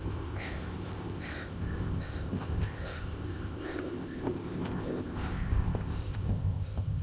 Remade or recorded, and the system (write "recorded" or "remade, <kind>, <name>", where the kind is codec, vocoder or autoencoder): remade, codec, ZipCodec